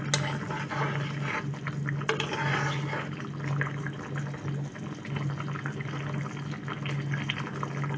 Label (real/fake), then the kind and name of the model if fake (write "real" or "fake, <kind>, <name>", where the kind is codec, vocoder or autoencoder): real